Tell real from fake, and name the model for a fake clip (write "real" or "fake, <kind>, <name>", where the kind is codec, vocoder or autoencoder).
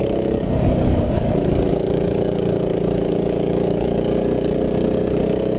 fake, codec, DAC